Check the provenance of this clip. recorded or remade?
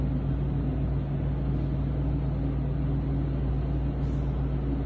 recorded